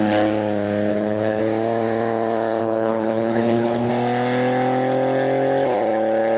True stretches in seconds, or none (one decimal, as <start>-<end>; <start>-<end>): 0.0-0.9; 1.4-2.6; 3.9-6.4